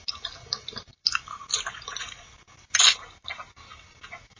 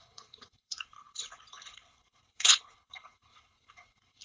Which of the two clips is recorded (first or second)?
first